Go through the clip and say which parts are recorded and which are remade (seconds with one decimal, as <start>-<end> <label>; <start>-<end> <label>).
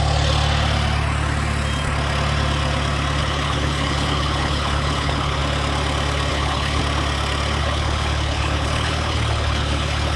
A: 0.0-3.2 recorded; 3.2-5.4 remade; 5.4-6.3 recorded; 6.3-6.8 remade; 6.8-7.6 recorded; 7.6-10.2 remade